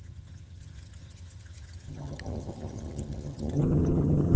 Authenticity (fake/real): fake